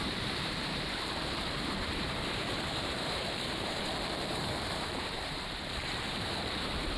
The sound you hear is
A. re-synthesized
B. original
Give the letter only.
A